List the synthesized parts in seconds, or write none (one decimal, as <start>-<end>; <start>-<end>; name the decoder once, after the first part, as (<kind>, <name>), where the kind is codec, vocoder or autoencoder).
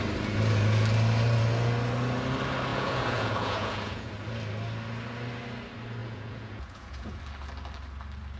2.7-4.1 (vocoder, Vocos); 6.0-7.2